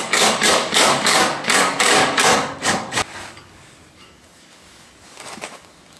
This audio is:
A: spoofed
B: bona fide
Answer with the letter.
A